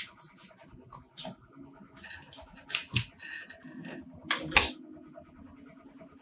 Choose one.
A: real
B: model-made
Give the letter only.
A